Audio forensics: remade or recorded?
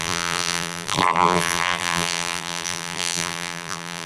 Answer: remade